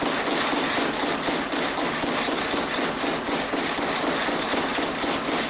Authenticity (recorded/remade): recorded